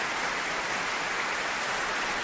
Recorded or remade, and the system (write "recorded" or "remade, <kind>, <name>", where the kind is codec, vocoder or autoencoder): recorded